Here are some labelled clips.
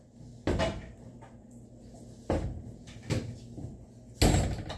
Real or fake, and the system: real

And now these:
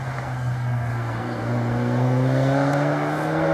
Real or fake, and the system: fake, codec, SNAC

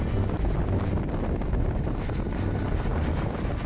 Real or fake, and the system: real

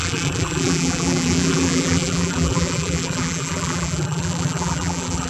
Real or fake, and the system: fake, vocoder, BigVGAN v2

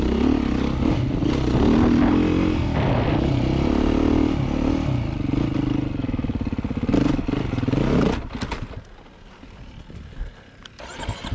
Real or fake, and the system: real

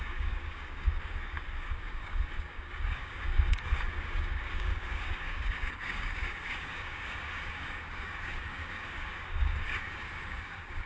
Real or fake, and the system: fake, codec, DAC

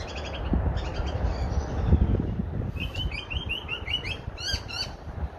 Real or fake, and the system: real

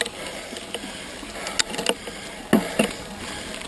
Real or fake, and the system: real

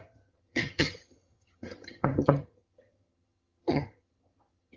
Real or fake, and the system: fake, vocoder, HiFi-GAN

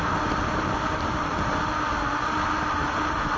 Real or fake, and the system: real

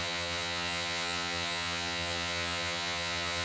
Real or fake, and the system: fake, vocoder, HiFi-GAN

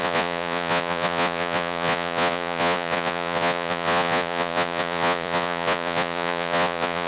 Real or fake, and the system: fake, vocoder, Vocos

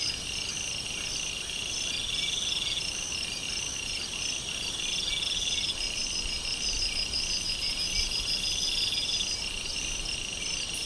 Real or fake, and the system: real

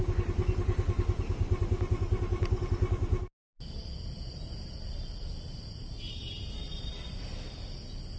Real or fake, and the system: real